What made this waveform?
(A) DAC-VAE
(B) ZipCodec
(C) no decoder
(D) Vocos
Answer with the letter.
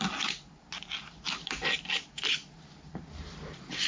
C